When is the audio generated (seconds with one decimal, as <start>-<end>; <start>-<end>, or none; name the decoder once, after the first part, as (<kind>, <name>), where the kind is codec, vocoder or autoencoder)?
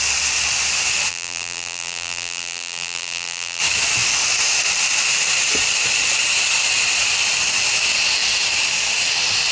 1.1-3.6 (vocoder, BigVGAN v2)